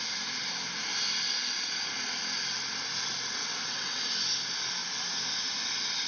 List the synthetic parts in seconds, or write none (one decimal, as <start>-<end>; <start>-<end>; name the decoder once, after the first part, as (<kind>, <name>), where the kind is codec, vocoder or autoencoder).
3.4-4.0 (vocoder, WaveNeXt)